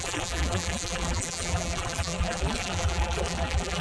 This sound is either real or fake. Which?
fake